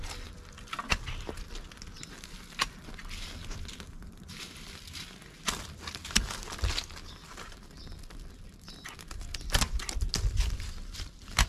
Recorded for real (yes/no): yes